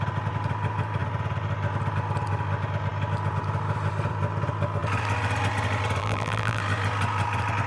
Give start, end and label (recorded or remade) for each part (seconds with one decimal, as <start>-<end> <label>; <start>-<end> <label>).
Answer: 0.0-6.0 recorded; 6.0-6.6 remade; 6.6-7.7 recorded